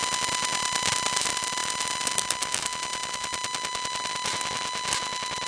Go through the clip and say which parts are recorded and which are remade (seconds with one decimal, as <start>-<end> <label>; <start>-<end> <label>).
0.0-5.5 recorded